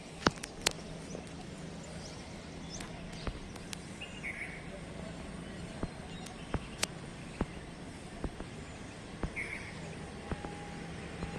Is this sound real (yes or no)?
yes